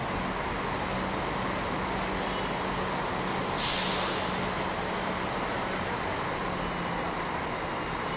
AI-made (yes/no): no